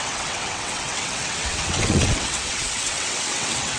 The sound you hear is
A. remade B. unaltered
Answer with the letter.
A